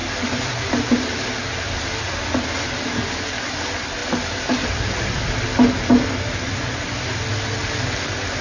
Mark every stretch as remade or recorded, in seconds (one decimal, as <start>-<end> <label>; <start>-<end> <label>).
0.0-2.4 remade; 2.4-4.0 recorded; 4.0-5.4 remade; 5.4-8.4 recorded